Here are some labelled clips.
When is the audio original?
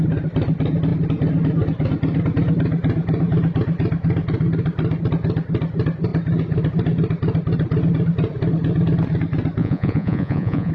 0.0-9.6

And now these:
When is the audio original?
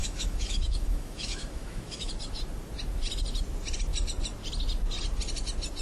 2.1-5.8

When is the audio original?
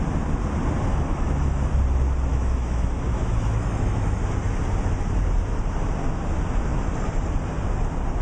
0.0-0.9; 1.7-2.3; 4.2-8.2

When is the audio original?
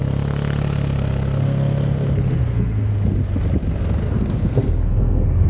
0.0-0.6; 3.1-4.0